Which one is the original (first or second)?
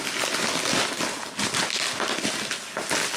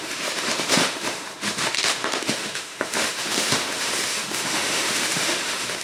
first